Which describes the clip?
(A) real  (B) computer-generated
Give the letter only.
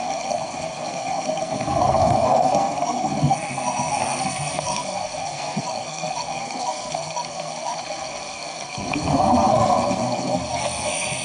B